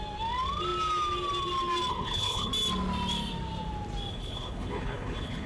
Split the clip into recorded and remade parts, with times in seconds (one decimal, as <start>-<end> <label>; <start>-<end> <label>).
0.0-1.9 recorded; 1.9-2.5 remade; 2.5-4.1 recorded; 4.1-5.5 remade